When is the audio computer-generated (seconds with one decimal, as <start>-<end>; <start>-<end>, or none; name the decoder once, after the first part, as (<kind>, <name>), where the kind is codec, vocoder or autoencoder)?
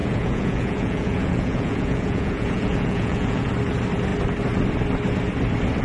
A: 0.0-3.5 (vocoder, Vocos)